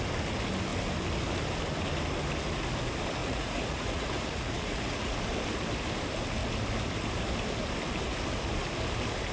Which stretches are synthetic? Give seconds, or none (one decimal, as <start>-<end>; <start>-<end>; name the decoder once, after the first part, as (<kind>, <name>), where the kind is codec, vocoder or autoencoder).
3.2-5.2 (vocoder, Vocos)